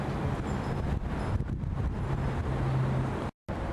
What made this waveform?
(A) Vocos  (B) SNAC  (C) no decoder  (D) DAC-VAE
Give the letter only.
C